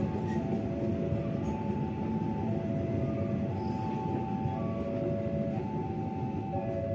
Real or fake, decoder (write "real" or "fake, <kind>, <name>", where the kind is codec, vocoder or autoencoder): real